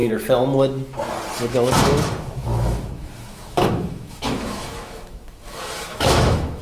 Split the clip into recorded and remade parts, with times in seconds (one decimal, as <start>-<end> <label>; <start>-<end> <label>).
0.0-1.4 recorded; 1.4-6.6 remade